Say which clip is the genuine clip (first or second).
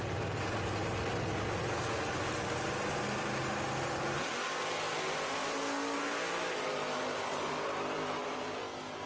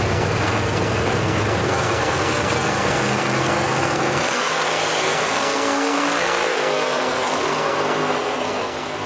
first